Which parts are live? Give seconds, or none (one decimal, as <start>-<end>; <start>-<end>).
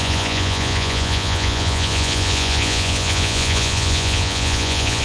none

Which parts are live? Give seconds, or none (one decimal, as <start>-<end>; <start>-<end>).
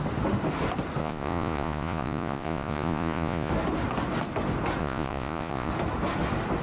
0.0-1.0; 3.5-4.8; 5.7-6.6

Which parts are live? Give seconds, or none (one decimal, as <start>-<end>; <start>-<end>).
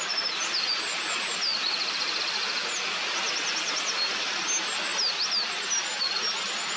0.0-6.8